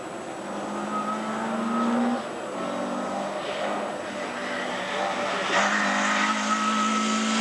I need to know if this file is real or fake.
real